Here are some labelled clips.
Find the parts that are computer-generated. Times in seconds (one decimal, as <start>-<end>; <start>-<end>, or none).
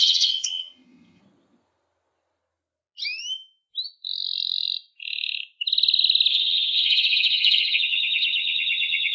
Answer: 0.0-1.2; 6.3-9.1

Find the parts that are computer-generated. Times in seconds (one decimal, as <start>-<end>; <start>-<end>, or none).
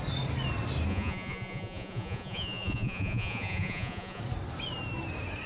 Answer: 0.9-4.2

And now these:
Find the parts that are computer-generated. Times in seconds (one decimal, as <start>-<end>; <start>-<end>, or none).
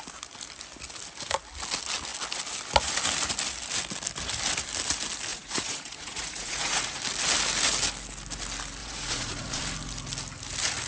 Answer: 5.3-7.0; 8.8-9.6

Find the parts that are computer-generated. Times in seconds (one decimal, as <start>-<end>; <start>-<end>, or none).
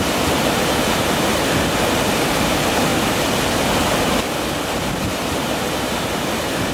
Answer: 0.0-2.9; 5.1-6.7